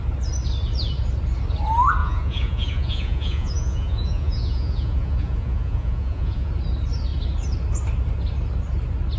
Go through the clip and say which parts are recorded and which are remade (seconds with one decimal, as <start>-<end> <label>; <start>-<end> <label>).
0.0-2.0 recorded; 2.0-6.5 remade; 6.5-9.2 recorded